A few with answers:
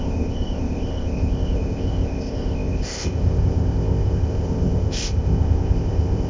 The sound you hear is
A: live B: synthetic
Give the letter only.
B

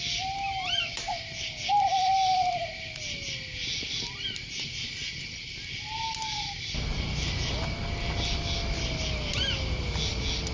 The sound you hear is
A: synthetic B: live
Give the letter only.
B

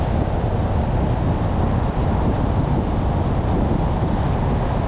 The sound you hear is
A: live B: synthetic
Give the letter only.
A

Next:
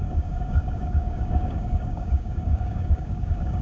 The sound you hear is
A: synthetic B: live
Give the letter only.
A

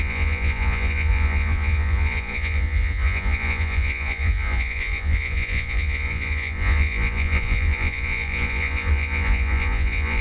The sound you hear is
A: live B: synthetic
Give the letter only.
B